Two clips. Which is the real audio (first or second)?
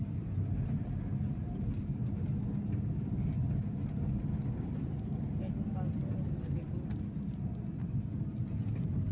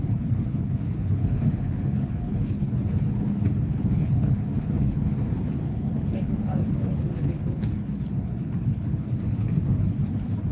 first